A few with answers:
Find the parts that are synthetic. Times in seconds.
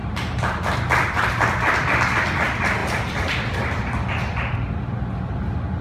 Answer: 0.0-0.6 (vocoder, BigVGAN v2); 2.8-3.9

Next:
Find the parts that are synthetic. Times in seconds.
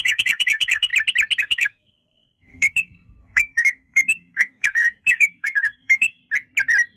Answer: 0.0-0.9 (codec, SNAC); 1.4-6.2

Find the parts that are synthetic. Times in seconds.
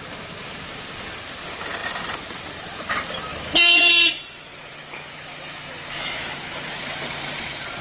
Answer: 3.3-3.9 (autoencoder, DAC-VAE); 4.5-6.7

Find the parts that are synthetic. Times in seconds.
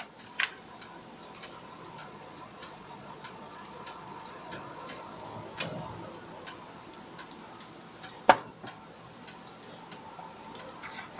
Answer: 2.0-5.0 (vocoder, Vocos)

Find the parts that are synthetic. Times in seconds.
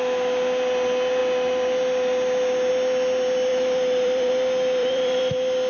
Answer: 3.5-4.3 (vocoder, BigVGAN v2); 4.8-5.3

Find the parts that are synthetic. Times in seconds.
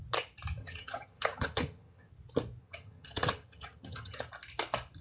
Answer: 0.6-2.1 (vocoder, HiFi-GAN); 2.6-4.3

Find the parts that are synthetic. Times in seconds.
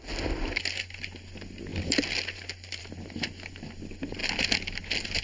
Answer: none